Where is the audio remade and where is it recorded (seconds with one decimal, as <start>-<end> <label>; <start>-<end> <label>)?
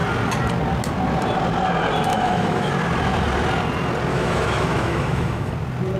0.0-2.1 recorded; 2.1-2.7 remade; 2.7-4.1 recorded; 4.1-5.5 remade; 5.5-6.0 recorded